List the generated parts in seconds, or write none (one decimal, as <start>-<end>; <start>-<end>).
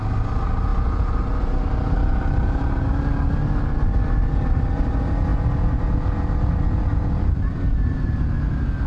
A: none